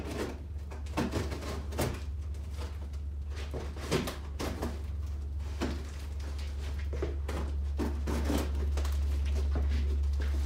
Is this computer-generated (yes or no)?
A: no